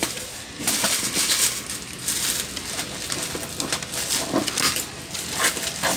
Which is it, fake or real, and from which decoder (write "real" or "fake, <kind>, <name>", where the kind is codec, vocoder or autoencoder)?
real